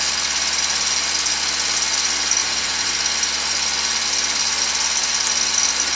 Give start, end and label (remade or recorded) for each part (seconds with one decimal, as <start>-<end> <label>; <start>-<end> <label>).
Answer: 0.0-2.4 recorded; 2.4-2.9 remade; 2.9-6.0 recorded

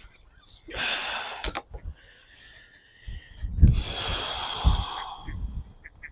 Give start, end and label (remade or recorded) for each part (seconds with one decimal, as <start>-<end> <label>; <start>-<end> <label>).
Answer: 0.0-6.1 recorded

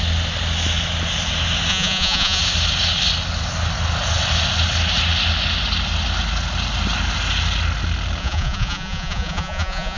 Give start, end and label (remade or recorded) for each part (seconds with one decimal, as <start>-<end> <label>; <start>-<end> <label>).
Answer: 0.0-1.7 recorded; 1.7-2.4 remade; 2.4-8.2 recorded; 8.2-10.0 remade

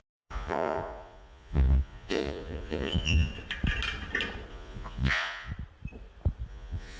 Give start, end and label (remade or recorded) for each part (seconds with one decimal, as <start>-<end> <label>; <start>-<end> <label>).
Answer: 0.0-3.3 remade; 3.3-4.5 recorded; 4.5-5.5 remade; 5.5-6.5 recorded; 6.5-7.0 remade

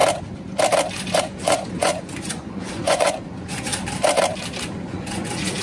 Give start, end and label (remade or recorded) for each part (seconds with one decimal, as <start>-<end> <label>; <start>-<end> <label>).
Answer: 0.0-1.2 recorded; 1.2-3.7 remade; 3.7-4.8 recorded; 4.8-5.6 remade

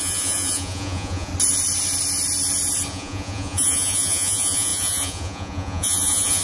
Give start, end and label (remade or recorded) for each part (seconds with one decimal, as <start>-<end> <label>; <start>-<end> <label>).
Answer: 0.0-1.3 remade; 1.3-2.9 recorded; 2.9-6.4 remade

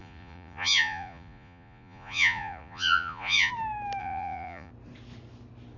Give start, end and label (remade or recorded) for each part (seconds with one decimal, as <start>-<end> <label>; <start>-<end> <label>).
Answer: 0.0-3.5 remade; 3.5-4.0 recorded; 4.0-4.7 remade; 4.7-5.8 recorded